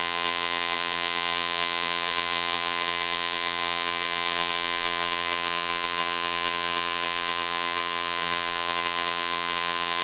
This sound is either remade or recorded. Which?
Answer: remade